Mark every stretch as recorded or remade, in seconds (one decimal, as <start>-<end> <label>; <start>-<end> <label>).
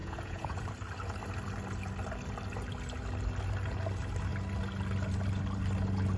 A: 0.0-0.6 remade; 0.6-6.2 recorded